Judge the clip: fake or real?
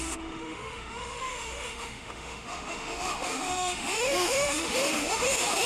fake